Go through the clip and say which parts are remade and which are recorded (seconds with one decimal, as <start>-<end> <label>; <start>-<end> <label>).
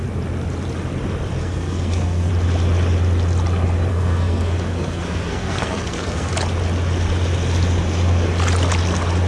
0.0-1.4 recorded; 1.4-2.3 remade; 2.3-3.9 recorded; 3.9-6.3 remade; 6.3-9.3 recorded